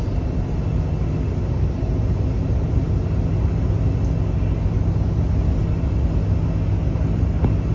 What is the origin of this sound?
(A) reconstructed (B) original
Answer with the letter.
B